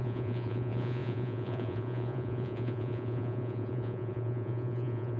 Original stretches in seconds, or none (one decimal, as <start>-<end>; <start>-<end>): none